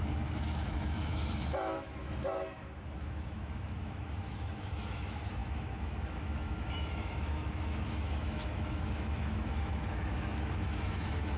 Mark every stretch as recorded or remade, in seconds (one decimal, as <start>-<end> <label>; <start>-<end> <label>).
0.0-11.4 remade